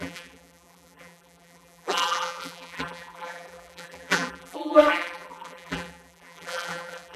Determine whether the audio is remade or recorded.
remade